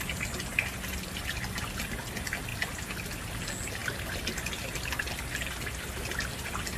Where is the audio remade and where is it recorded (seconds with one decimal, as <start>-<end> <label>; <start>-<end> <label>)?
0.0-6.8 recorded